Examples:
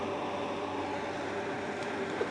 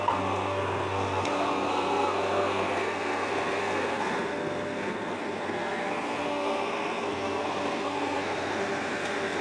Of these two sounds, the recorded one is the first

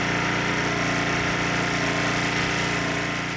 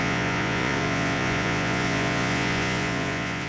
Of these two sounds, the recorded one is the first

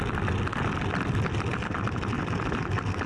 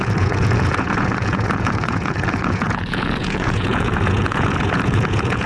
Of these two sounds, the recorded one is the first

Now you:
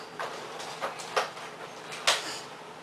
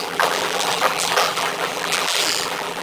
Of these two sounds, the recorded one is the first